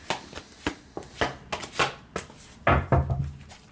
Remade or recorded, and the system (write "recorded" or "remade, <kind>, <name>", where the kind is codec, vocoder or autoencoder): recorded